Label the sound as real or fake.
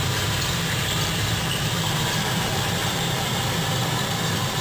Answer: fake